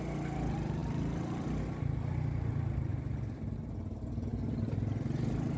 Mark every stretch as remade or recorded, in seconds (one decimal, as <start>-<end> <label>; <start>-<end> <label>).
0.0-5.6 recorded